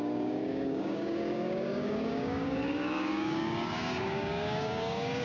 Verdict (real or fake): fake